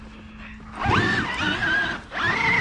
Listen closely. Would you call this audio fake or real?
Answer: real